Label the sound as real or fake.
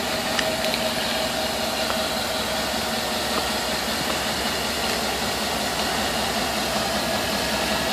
real